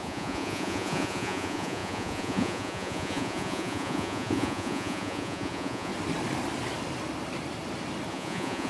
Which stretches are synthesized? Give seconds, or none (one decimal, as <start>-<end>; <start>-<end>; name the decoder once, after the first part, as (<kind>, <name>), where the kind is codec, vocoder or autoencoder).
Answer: 0.0-5.9 (vocoder, Vocos); 8.1-8.7